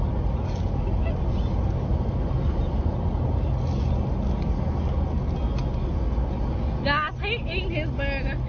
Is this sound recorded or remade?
recorded